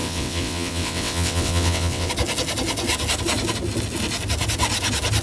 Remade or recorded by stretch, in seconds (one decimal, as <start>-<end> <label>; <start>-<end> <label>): 0.0-2.1 remade; 2.1-5.2 recorded